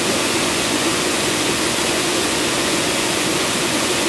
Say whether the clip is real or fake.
fake